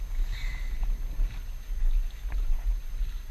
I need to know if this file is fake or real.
real